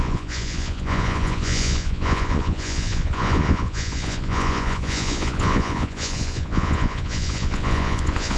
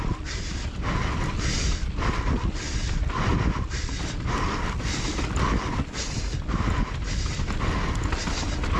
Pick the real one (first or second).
second